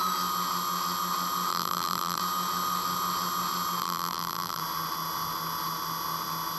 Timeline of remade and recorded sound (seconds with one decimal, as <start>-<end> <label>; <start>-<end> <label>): 0.0-1.5 recorded; 1.5-2.2 remade; 2.2-3.8 recorded; 3.8-4.6 remade; 4.6-6.6 recorded